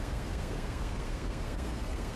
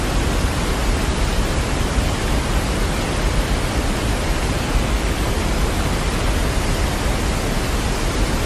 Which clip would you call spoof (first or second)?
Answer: first